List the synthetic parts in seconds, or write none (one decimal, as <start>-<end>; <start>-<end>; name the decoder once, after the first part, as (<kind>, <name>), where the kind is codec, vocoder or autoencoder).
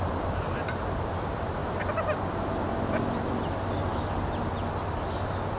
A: none